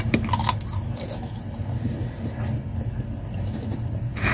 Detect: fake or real real